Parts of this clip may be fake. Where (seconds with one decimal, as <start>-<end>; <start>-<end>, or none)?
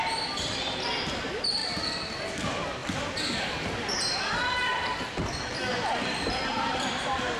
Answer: 1.6-2.3